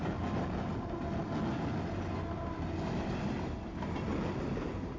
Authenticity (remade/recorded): recorded